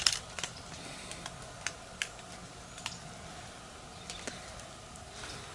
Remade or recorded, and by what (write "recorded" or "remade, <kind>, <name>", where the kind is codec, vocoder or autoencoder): recorded